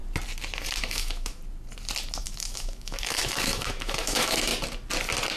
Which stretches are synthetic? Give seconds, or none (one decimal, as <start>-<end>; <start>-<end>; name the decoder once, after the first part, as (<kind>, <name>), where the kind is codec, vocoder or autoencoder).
0.8-1.4 (autoencoder, DAC-VAE); 2.2-4.5